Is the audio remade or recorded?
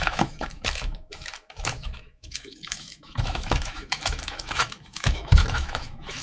remade